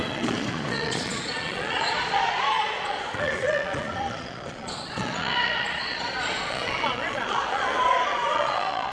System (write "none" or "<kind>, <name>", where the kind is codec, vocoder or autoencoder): vocoder, Vocos